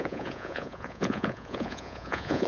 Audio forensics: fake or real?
fake